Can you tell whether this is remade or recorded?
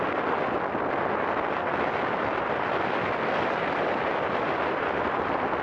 recorded